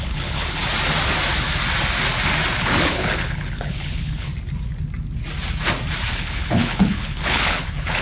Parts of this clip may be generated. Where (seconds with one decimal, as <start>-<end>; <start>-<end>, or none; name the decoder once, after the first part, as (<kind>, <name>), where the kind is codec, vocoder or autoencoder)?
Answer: 0.0-0.6 (codec, HILCodec); 2.6-4.3; 6.1-8.0